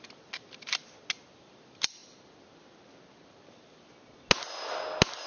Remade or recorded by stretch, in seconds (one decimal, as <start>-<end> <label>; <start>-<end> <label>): 0.0-5.3 recorded